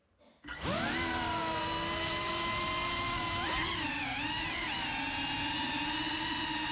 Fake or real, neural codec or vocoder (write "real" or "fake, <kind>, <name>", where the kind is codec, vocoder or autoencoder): real